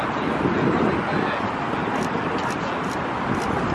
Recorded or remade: recorded